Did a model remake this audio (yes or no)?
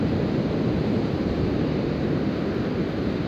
no